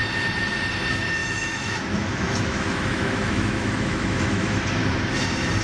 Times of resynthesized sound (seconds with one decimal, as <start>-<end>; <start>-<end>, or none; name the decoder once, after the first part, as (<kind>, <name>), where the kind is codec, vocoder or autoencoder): 1.2-4.6 (autoencoder, DAC-VAE)